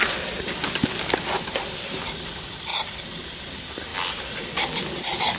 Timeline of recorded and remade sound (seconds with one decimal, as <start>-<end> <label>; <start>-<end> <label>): 0.0-5.4 recorded